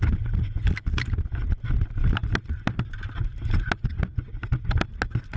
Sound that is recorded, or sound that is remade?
recorded